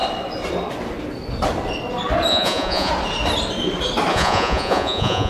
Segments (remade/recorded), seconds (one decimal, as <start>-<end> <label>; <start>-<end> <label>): 0.0-2.3 recorded; 2.3-2.9 remade; 2.9-4.1 recorded; 4.1-5.3 remade